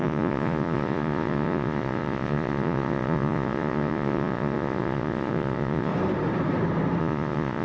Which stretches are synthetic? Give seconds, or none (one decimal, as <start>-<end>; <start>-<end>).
0.0-5.9; 7.0-7.6